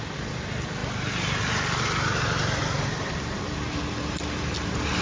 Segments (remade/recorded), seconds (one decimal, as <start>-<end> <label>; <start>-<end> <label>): 0.0-5.0 recorded